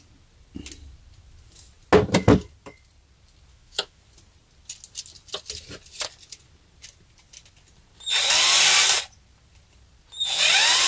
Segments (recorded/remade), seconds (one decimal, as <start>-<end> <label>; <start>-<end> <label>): 0.0-3.5 recorded; 3.5-4.0 remade; 4.0-10.9 recorded